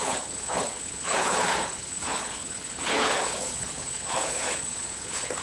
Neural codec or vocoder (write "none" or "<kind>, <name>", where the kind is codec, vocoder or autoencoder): codec, HILCodec